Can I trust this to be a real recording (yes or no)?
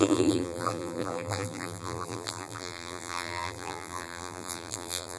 no